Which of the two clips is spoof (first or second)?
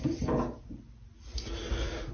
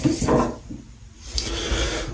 second